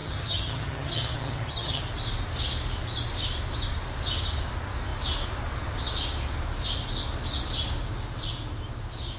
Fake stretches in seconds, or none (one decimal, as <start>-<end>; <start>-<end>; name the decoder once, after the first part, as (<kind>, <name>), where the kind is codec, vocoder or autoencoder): 0.0-1.8 (vocoder, HiFi-GAN)